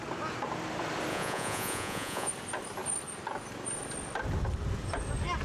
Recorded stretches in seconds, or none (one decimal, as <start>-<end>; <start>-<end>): 0.0-1.1; 2.3-5.4